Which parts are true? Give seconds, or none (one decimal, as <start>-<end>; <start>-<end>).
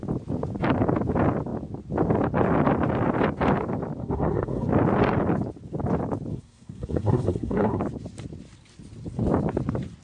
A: 0.0-4.0; 4.7-6.3; 7.8-10.0